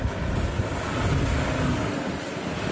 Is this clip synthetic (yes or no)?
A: no